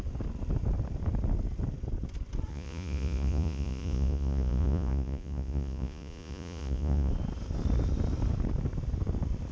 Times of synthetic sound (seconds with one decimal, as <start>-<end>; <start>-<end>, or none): 2.5-7.1